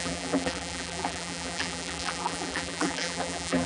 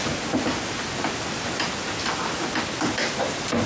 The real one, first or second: second